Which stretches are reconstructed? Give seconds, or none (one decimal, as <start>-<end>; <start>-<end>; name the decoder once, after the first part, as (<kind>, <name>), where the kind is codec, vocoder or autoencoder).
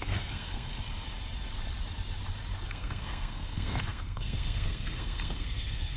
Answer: 0.0-0.7 (codec, SNAC); 2.7-6.0